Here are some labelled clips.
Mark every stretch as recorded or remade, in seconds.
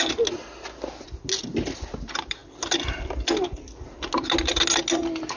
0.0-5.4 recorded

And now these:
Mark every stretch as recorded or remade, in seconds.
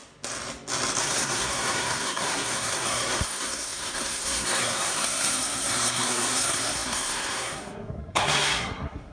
0.0-1.0 recorded; 1.0-9.1 remade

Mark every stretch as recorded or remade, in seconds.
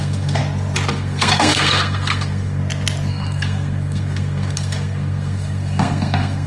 0.0-0.4 remade; 0.4-0.9 recorded; 0.9-2.6 remade; 2.6-3.1 recorded; 3.1-6.5 remade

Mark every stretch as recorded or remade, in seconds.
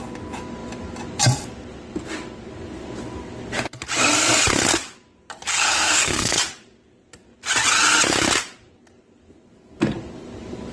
0.0-5.5 recorded; 5.5-6.4 remade; 6.4-10.7 recorded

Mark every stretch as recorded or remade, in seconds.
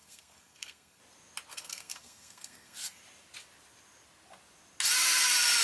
0.0-1.0 remade; 1.0-1.5 recorded; 1.5-3.0 remade; 3.0-5.6 recorded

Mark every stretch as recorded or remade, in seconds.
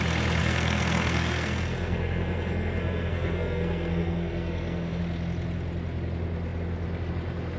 0.0-0.4 recorded; 0.4-5.0 remade; 5.0-7.6 recorded